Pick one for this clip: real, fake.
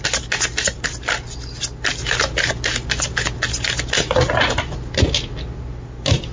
real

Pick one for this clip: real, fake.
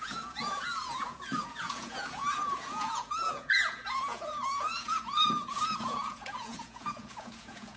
fake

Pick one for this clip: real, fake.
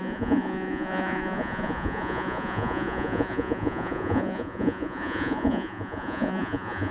fake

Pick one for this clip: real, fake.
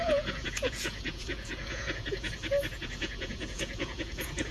fake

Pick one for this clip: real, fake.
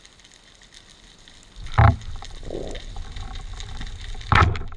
real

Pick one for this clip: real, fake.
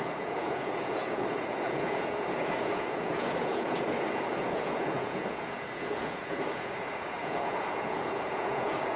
fake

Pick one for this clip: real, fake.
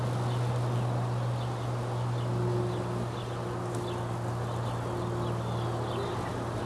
real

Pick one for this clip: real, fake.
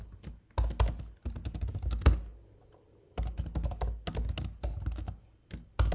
real